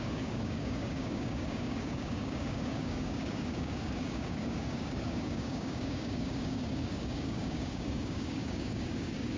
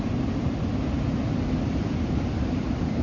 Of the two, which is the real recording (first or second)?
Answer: second